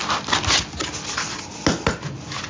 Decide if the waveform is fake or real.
real